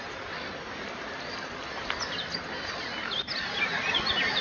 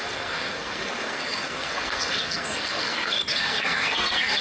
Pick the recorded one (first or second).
first